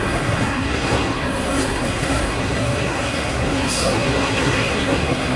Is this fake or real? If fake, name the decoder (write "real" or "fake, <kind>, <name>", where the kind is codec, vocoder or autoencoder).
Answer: fake, codec, SNAC